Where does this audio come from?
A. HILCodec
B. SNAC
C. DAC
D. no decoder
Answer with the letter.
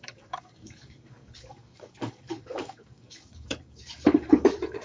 C